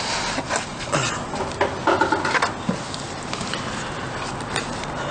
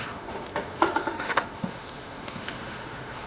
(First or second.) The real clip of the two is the first